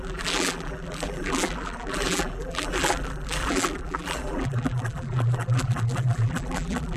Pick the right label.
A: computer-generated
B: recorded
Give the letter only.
A